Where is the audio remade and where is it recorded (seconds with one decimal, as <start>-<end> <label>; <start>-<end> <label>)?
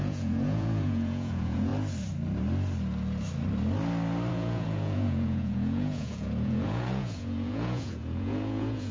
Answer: 0.0-1.7 remade; 1.7-4.3 recorded; 4.3-8.9 remade